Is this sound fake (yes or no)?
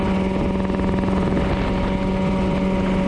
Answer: no